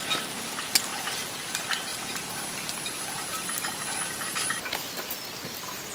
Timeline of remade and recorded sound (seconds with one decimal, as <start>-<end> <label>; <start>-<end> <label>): 0.0-5.9 recorded